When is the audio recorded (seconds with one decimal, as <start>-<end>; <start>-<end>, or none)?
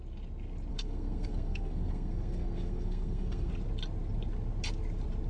0.0-0.7; 3.5-5.3